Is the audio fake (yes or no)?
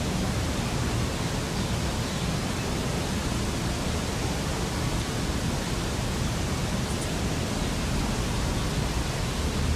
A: no